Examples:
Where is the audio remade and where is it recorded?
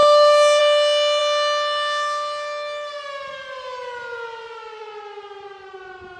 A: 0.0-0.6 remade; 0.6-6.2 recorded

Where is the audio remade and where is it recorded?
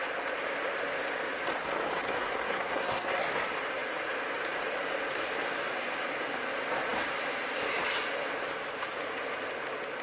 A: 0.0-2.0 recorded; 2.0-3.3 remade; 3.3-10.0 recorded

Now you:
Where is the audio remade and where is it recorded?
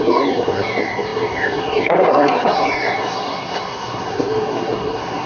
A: 0.0-5.3 remade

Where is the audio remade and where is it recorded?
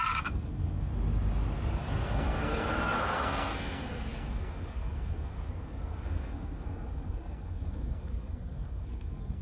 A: 0.0-0.9 remade; 0.9-1.8 recorded; 1.8-9.4 remade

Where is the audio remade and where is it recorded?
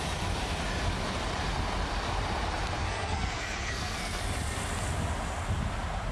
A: 0.0-2.8 recorded; 2.8-4.2 remade; 4.2-6.1 recorded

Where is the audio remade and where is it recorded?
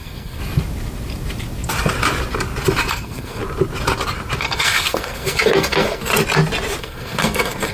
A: 0.0-0.4 remade; 0.4-2.9 recorded; 2.9-3.4 remade; 3.4-4.4 recorded; 4.4-6.1 remade; 6.1-6.8 recorded; 6.8-7.7 remade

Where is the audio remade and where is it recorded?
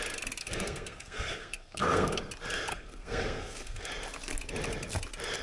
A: 0.0-0.4 recorded; 0.4-2.2 remade; 2.2-2.7 recorded; 2.7-3.9 remade; 3.9-5.4 recorded